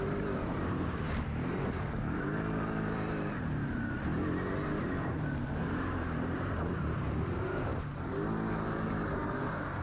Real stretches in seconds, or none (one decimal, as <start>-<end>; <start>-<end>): 4.1-5.6